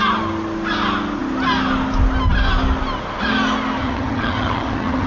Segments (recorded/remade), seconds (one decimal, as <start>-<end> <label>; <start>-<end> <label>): 0.0-3.8 recorded; 3.8-5.1 remade